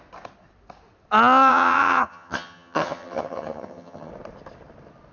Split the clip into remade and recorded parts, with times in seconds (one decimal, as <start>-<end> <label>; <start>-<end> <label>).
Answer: 0.0-1.5 recorded; 1.5-4.1 remade; 4.1-5.1 recorded